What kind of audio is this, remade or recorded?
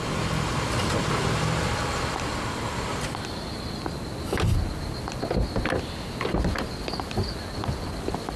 recorded